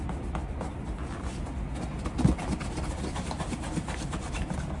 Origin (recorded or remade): recorded